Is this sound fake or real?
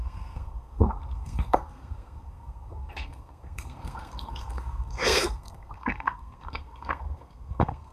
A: fake